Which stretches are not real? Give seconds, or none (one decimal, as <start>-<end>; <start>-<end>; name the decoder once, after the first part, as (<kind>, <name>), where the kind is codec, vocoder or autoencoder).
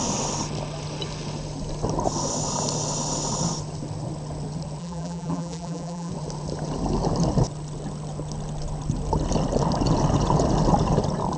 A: 4.8-6.1 (vocoder, BigVGAN v2)